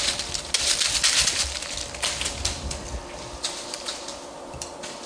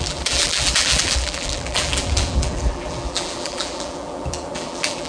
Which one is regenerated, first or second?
second